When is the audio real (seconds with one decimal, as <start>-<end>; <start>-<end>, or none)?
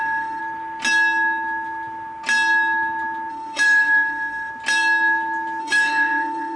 0.4-3.3; 4.5-5.6